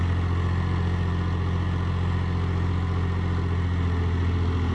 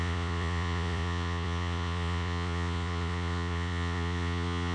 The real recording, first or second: first